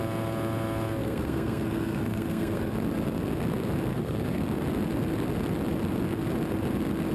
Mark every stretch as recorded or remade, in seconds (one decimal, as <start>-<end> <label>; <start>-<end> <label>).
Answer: 0.0-1.0 recorded; 1.0-2.7 remade; 2.7-3.9 recorded; 3.9-4.4 remade; 4.4-7.1 recorded